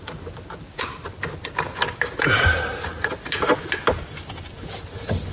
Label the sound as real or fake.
real